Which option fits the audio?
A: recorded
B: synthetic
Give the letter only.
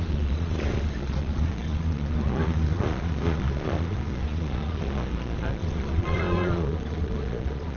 B